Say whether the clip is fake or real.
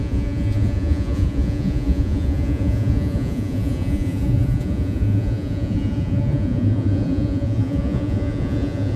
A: fake